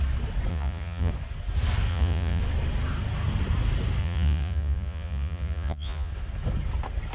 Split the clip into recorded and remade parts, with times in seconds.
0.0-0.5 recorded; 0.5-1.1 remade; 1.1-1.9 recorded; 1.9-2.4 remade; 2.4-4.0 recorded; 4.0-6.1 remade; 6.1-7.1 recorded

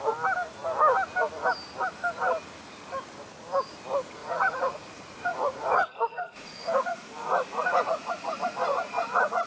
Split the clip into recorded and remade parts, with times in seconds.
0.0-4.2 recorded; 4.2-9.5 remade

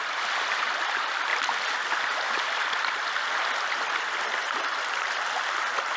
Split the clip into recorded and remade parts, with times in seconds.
0.0-6.0 recorded